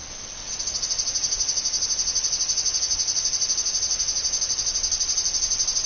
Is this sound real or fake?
real